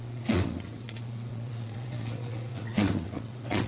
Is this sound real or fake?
fake